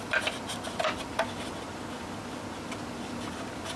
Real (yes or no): yes